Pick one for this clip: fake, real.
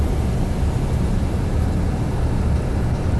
real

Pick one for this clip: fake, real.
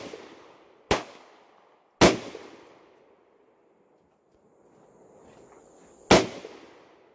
real